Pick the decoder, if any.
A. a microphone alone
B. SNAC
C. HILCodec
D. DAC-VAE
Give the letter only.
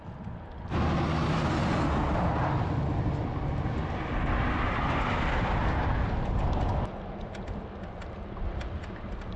A